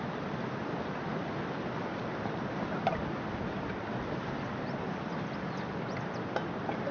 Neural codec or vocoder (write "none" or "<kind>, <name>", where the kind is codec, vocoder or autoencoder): none